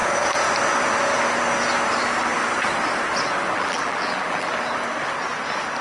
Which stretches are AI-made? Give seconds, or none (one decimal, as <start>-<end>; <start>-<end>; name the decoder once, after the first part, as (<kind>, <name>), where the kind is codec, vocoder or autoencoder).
3.5-4.5 (vocoder, BigVGAN v2)